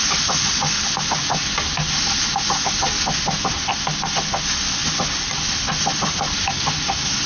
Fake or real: real